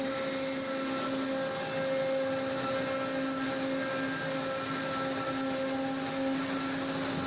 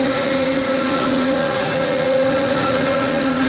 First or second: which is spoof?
second